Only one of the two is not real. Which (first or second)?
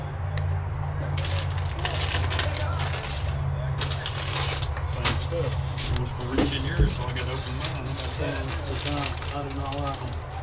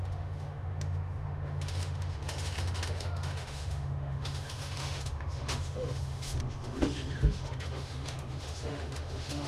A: second